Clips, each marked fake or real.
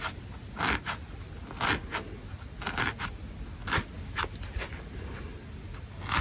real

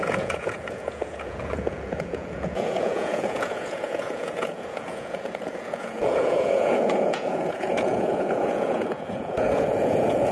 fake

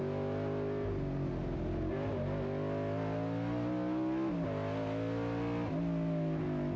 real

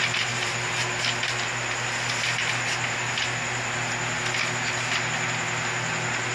real